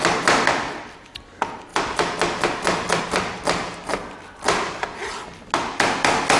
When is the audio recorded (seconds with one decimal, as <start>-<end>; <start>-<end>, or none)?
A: 0.0-6.4